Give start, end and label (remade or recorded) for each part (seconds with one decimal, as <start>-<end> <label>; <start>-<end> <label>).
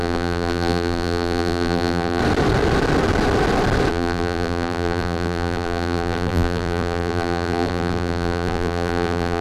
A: 0.0-2.2 remade; 2.2-3.9 recorded; 3.9-9.4 remade